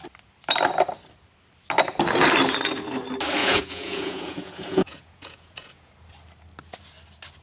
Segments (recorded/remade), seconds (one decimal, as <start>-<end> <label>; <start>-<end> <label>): 0.0-3.4 recorded; 3.4-5.9 remade; 5.9-7.4 recorded